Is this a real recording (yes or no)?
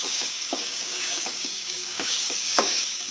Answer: no